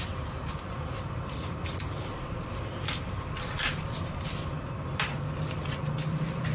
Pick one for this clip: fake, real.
real